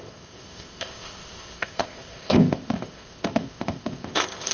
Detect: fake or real fake